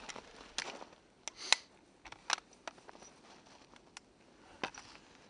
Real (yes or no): yes